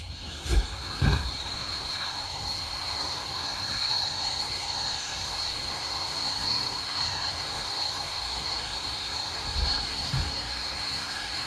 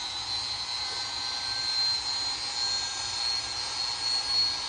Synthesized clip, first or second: first